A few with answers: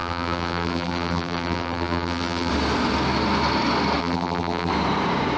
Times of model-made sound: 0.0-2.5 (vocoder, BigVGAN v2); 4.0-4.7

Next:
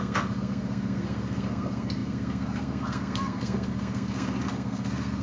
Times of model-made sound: 0.0-5.2 (codec, SNAC)

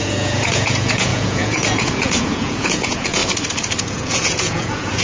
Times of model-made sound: 0.0-3.2 (vocoder, Vocos); 3.8-5.0

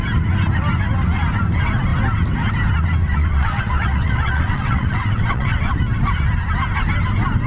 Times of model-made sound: 3.1-5.7 (vocoder, WaveNeXt)

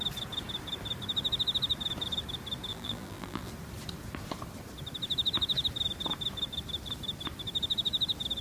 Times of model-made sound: 2.7-3.5 (vocoder, BigVGAN v2)

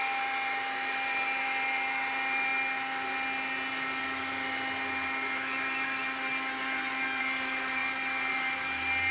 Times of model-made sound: 0.0-2.5 (vocoder, BigVGAN v2); 7.2-7.8; 8.3-9.1

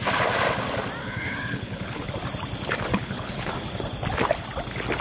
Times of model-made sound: 1.0-2.1 (codec, HILCodec); 2.9-3.5

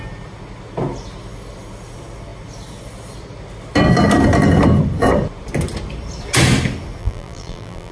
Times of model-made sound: 7.0-7.9 (vocoder, BigVGAN v2)